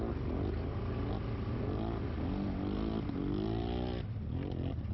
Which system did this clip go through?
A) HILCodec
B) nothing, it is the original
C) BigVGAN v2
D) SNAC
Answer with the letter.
B